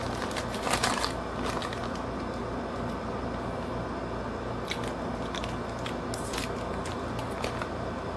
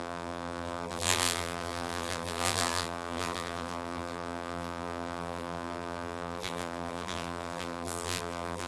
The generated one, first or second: second